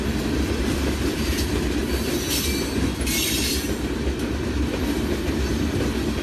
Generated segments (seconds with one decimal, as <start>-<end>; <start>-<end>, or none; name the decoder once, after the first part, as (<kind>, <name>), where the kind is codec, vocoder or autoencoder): none